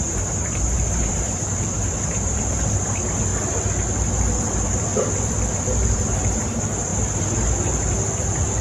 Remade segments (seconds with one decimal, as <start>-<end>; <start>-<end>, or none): 0.0-3.3; 5.5-6.9

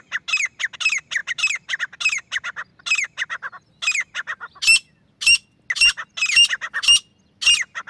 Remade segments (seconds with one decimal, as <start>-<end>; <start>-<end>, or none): 1.2-1.8

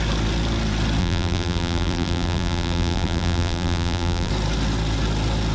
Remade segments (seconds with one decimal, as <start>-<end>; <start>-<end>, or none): 1.0-4.3

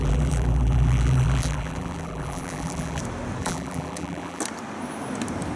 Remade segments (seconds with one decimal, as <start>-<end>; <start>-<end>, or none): 0.0-3.0; 3.4-4.4

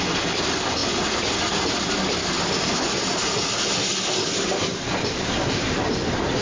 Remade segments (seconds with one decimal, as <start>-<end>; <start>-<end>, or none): none

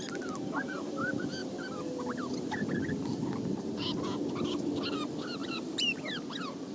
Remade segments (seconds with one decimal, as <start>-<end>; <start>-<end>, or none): 5.4-6.2

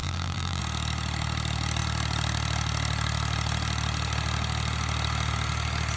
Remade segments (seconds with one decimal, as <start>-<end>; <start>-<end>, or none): 0.0-0.6

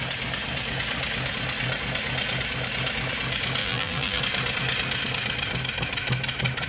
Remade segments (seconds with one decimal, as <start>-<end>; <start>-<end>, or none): 3.6-4.2